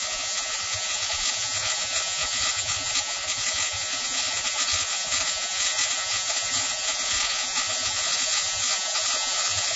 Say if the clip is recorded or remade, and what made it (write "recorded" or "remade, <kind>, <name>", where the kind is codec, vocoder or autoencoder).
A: remade, vocoder, Vocos